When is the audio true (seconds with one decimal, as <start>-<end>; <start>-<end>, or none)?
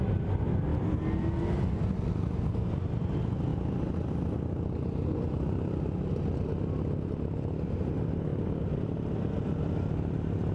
0.0-10.5